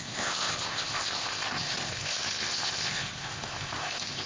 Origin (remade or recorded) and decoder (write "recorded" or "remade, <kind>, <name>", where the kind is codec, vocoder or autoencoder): remade, codec, ZipCodec